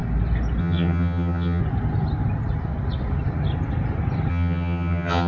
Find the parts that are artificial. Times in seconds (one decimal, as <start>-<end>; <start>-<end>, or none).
0.6-1.6; 4.3-5.3

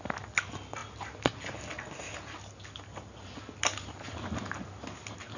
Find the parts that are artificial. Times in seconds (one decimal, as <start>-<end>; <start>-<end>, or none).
none

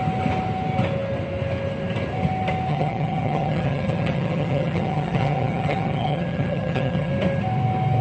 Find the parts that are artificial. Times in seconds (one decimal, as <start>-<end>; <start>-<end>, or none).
2.7-7.1

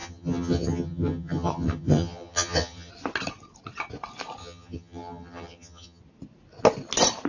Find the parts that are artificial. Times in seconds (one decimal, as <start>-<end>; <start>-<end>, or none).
0.0-2.9; 4.4-6.0

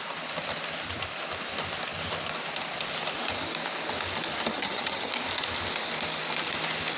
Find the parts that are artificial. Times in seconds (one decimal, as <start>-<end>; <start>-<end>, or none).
4.5-5.1